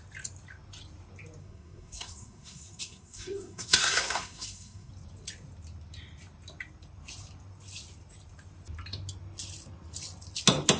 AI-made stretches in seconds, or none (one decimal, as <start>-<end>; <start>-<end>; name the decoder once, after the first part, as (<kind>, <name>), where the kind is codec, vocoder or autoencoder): 1.4-4.9 (codec, SNAC)